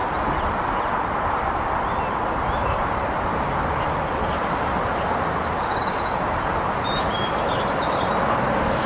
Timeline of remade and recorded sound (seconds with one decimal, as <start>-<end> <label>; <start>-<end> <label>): 0.0-2.6 recorded; 2.6-3.1 remade; 3.1-4.4 recorded; 4.4-8.0 remade; 8.0-8.9 recorded